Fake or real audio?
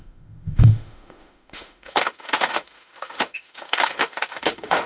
fake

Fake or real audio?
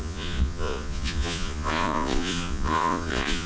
fake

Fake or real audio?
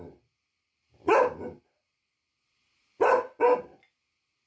real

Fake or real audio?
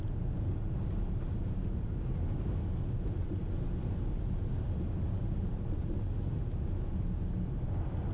real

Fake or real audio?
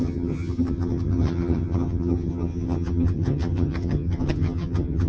fake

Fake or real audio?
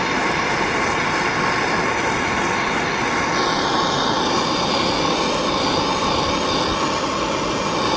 real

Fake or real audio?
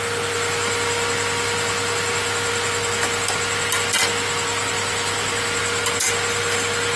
real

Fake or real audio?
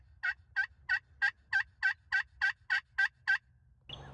real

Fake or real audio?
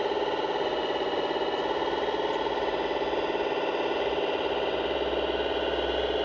real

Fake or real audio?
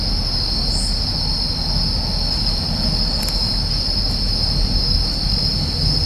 real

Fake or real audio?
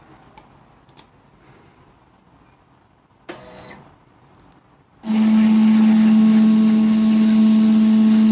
real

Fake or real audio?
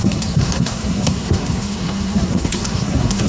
fake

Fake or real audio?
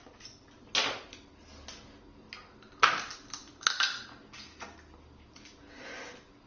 real